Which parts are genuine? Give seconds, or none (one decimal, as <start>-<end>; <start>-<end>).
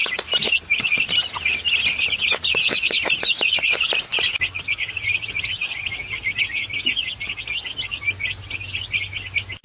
0.0-9.6